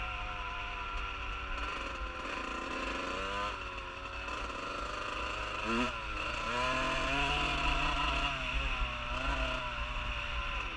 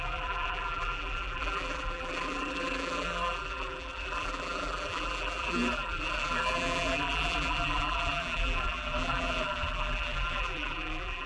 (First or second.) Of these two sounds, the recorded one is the first